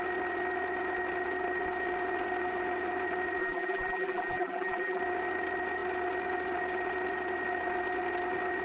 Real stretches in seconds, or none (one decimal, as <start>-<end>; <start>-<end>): 0.0-3.4; 5.0-8.6